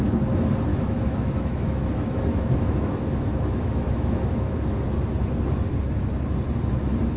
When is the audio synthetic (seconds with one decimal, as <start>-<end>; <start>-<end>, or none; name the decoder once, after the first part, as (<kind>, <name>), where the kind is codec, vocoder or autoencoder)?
0.7-4.8 (autoencoder, DAC-VAE)